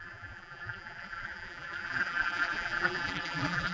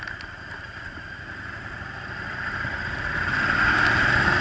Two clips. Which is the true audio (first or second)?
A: second